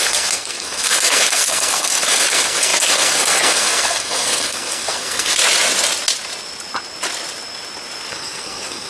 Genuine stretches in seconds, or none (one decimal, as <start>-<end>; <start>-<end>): 5.4-8.1